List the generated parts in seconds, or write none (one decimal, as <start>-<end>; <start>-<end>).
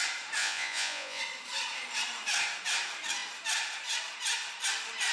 0.4-1.2